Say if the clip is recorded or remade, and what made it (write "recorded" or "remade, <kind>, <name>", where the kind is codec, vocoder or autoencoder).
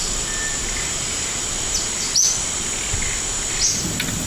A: recorded